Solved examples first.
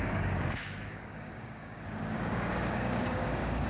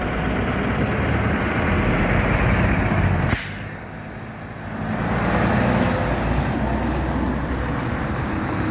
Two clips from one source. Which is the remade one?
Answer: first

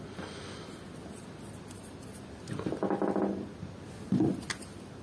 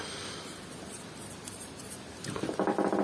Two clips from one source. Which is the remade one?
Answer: second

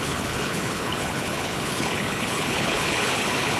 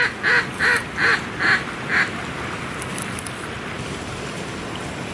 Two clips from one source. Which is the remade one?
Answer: first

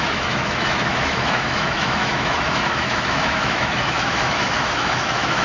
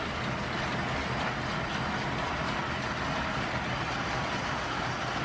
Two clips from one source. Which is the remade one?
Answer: first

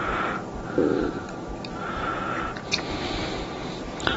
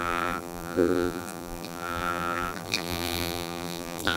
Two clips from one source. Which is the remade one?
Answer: second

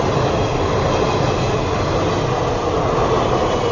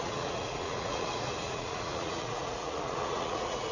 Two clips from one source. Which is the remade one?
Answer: second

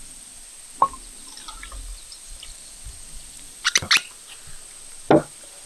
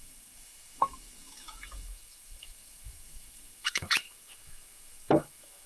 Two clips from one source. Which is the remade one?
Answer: second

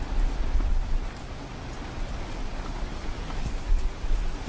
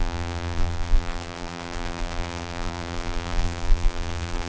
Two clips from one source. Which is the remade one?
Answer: second